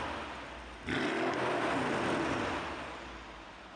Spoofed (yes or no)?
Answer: no